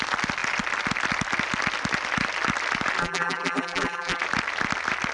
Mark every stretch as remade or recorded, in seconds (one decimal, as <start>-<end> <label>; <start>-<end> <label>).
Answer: 0.0-3.0 recorded; 3.0-4.2 remade; 4.2-5.1 recorded